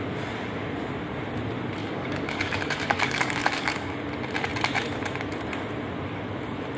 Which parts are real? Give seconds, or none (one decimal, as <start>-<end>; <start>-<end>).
0.0-1.8; 3.9-6.8